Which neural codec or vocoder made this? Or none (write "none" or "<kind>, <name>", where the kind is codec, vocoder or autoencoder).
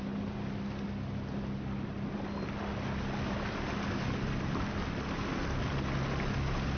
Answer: none